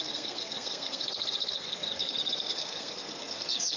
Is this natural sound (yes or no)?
no